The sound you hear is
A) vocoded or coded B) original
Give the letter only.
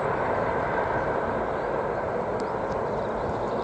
B